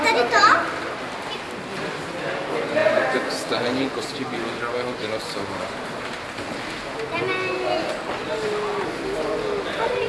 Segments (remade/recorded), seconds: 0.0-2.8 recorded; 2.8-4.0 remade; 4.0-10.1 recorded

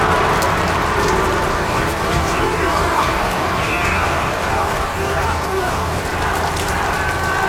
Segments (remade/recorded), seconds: 0.0-1.5 recorded; 1.5-6.0 remade; 6.0-7.5 recorded

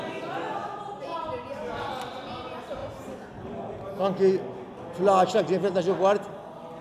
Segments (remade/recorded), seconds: 0.0-6.8 recorded

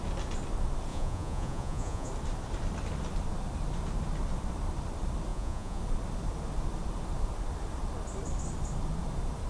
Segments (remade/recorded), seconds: 0.0-0.9 recorded; 0.9-2.1 remade; 2.1-5.3 recorded; 5.3-5.8 remade; 5.8-9.5 recorded

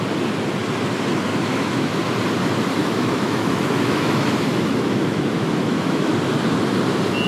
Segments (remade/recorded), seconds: 0.0-1.3 recorded; 1.3-1.9 remade; 1.9-2.8 recorded; 2.8-6.1 remade; 6.1-7.3 recorded

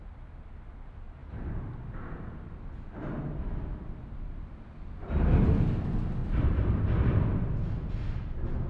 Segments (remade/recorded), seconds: 0.0-6.2 recorded; 6.2-6.8 remade; 6.8-8.7 recorded

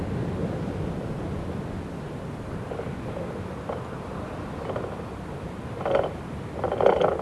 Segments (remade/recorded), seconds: 0.0-7.2 recorded